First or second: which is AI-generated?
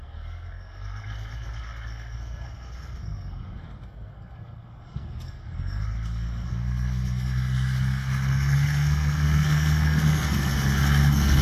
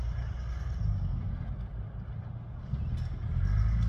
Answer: first